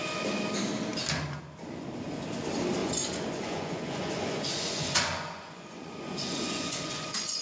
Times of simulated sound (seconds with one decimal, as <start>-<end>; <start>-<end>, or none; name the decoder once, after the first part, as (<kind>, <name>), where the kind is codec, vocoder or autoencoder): 2.8-7.4 (vocoder, Vocos)